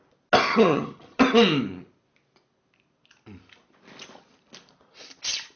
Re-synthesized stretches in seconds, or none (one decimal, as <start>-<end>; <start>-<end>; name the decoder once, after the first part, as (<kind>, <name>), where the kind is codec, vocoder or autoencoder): 0.5-1.2 (vocoder, HiFi-GAN)